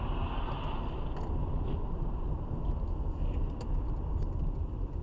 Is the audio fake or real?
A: real